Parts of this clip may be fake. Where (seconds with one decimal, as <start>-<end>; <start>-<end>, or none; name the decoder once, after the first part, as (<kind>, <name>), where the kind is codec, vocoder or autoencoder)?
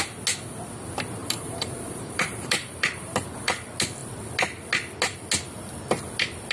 1.2-3.5 (vocoder, BigVGAN v2)